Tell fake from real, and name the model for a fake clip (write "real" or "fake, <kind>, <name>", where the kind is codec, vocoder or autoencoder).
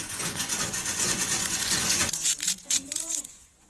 fake, vocoder, Vocos